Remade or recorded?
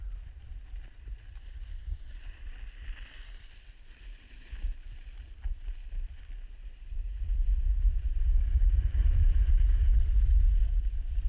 remade